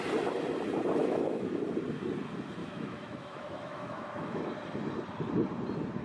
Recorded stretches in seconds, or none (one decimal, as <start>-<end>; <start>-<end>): 0.0-1.0; 1.6-2.6; 4.4-6.0